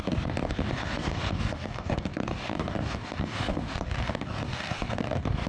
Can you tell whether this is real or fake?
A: fake